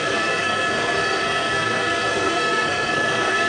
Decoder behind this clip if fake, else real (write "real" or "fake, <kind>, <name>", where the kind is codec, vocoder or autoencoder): fake, codec, SNAC